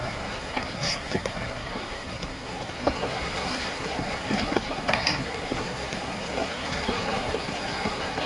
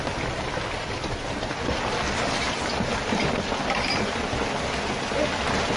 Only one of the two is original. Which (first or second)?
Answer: second